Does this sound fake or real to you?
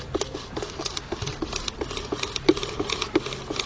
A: real